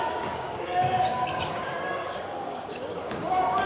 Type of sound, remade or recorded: remade